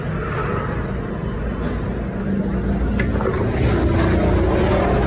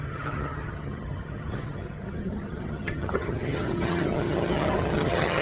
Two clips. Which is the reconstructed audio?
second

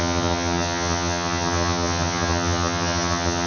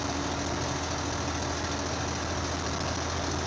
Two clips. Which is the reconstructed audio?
first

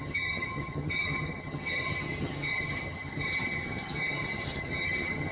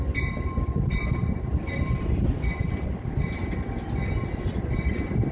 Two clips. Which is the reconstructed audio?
first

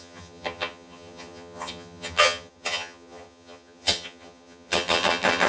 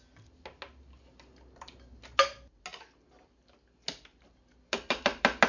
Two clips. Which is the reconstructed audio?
first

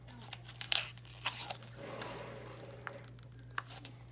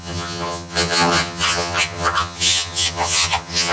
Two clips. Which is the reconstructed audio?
second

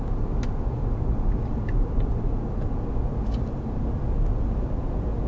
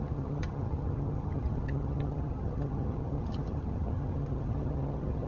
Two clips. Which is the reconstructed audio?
second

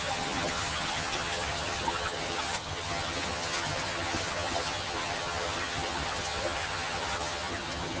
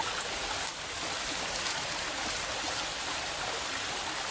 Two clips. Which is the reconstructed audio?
first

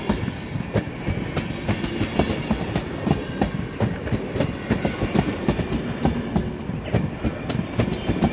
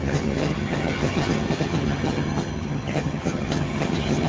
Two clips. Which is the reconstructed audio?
second